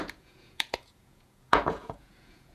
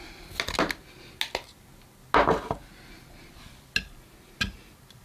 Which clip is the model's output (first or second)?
first